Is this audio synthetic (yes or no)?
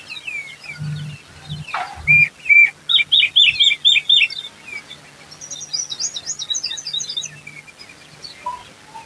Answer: no